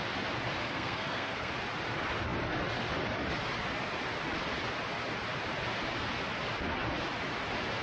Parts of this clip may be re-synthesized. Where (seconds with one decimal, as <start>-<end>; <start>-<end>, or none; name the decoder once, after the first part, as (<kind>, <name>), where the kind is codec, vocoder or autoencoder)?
0.6-1.5 (codec, SNAC)